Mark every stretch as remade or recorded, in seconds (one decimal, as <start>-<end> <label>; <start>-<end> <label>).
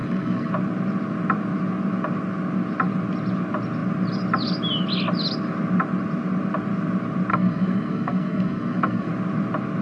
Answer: 0.0-0.5 remade; 0.5-7.3 recorded; 7.3-9.1 remade; 9.1-9.8 recorded